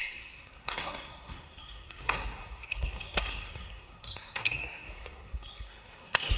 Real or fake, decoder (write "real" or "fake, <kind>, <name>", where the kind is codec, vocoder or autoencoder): fake, codec, SNAC